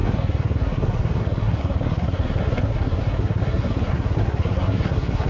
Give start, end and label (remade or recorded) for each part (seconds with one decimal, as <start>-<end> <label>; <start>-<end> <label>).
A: 0.0-5.3 remade